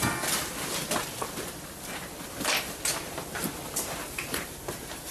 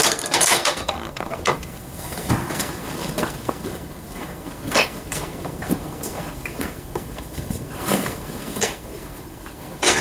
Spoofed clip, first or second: second